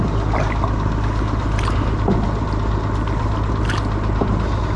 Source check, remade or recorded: recorded